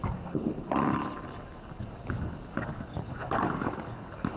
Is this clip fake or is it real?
fake